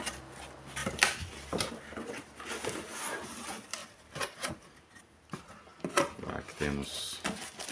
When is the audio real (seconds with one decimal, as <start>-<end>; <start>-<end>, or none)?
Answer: 0.0-3.8; 5.0-7.7